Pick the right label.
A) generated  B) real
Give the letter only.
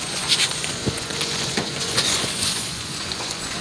A